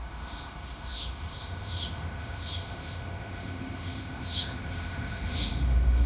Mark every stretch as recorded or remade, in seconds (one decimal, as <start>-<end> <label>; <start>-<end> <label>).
0.0-6.1 remade